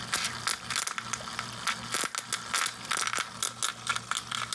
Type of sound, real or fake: real